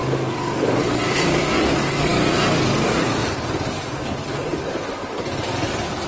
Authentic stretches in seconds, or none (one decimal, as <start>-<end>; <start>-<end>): 0.0-1.2